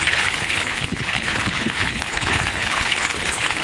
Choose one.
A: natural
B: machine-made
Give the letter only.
B